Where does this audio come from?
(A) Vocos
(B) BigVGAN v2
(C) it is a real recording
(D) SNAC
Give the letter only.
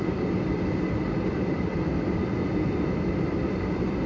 B